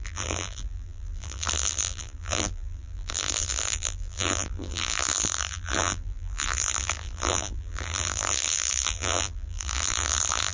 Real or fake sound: fake